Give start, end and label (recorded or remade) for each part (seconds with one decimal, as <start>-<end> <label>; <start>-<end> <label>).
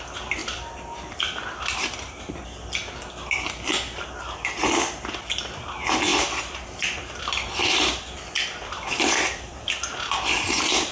0.0-0.4 recorded; 0.4-2.4 remade; 2.4-6.1 recorded; 6.1-9.9 remade; 9.9-10.9 recorded